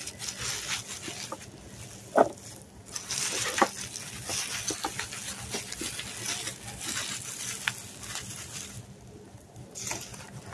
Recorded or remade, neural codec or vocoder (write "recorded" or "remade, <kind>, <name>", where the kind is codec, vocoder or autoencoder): recorded